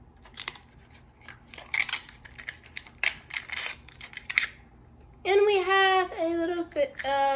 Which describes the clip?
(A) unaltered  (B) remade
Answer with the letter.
A